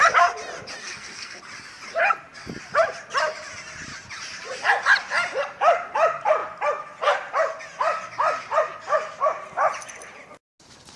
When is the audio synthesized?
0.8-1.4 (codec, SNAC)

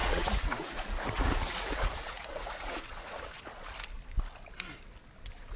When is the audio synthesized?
0.0-3.4 (vocoder, Vocos)

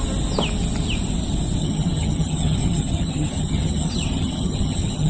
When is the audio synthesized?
1.6-5.1 (vocoder, HiFi-GAN)

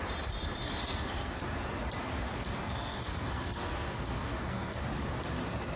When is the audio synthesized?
0.8-1.4 (codec, SNAC); 2.6-4.8